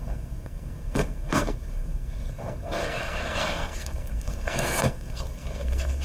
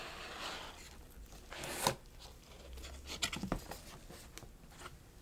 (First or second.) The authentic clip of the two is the second